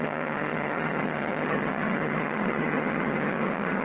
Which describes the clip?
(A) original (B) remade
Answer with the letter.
B